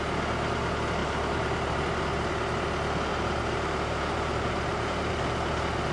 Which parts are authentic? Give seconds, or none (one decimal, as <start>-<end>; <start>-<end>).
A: 0.0-1.0; 1.8-3.1; 5.1-5.9